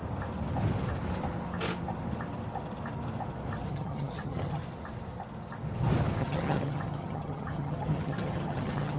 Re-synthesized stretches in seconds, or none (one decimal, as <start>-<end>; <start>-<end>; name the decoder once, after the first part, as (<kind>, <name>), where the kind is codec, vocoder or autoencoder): 3.7-4.6 (vocoder, HiFi-GAN); 6.2-9.0